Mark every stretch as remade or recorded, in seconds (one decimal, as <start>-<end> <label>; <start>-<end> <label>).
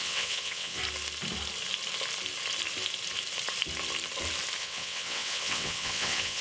0.0-0.8 remade; 0.8-4.6 recorded; 4.6-6.4 remade